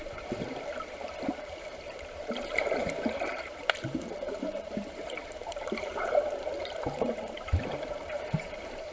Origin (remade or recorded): remade